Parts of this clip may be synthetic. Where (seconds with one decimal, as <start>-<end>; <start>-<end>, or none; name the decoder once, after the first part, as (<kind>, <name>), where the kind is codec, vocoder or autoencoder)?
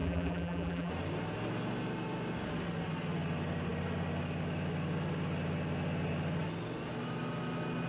0.0-0.9 (vocoder, BigVGAN v2)